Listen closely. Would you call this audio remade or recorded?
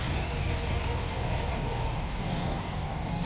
remade